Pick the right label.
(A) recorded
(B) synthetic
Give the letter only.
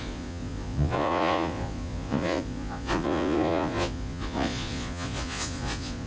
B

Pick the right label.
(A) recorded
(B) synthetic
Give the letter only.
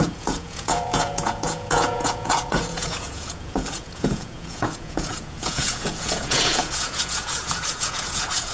B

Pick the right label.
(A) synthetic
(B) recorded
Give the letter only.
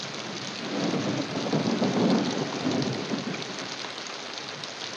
B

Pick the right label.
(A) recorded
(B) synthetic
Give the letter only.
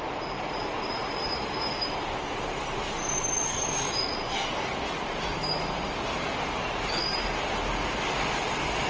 A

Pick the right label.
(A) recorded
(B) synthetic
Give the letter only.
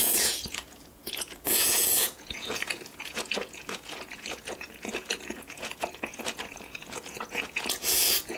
B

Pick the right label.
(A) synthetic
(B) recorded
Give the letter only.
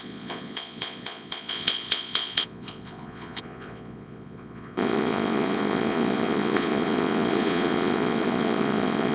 A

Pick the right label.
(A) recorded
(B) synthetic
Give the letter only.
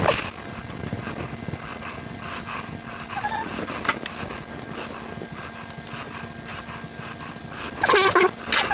A